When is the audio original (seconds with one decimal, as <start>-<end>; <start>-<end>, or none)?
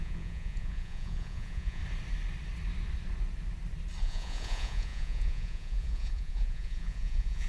1.8-4.0